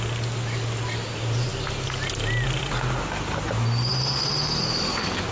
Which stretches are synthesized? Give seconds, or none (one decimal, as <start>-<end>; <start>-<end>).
none